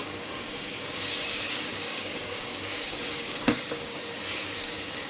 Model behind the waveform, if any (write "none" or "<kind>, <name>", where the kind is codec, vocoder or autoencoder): codec, DAC